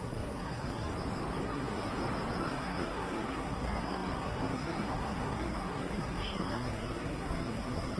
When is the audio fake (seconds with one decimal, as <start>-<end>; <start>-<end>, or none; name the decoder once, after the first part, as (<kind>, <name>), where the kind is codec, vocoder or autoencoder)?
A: 0.0-0.9 (codec, SNAC); 1.4-1.9; 2.4-8.0